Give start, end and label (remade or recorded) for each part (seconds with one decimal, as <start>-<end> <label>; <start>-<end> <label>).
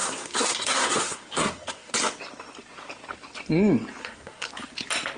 0.0-1.9 remade; 1.9-4.0 recorded; 4.0-4.5 remade; 4.5-5.2 recorded